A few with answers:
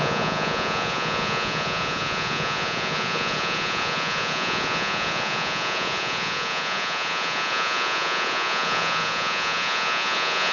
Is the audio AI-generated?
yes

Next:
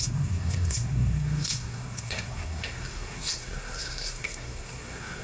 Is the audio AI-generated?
yes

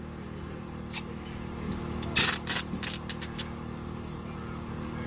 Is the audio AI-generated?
no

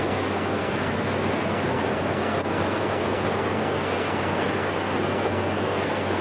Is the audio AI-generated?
yes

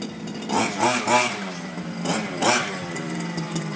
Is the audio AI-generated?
no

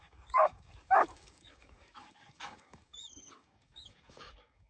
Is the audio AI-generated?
yes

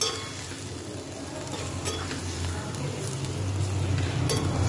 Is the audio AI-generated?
no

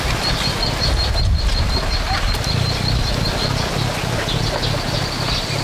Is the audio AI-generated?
no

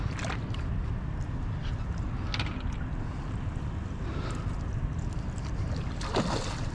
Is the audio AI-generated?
no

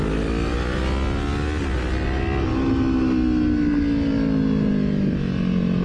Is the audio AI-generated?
no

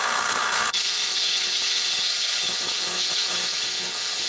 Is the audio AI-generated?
yes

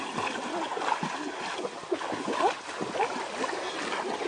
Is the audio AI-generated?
no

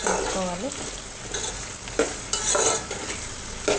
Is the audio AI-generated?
no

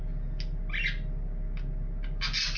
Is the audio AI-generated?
no